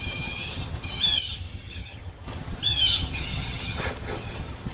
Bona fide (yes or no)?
no